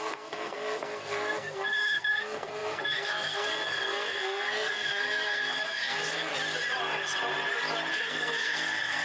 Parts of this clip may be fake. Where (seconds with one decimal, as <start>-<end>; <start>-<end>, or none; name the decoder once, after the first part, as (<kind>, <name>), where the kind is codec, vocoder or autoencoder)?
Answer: 0.0-6.3 (codec, SNAC); 7.9-9.0